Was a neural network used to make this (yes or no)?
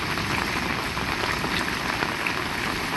no